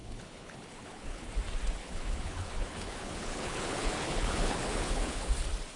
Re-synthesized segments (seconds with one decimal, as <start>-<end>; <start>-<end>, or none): 0.0-1.3; 1.8-5.3